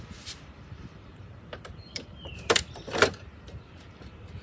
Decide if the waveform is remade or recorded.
remade